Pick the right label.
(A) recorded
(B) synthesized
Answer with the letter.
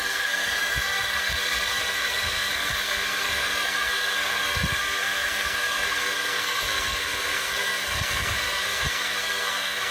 B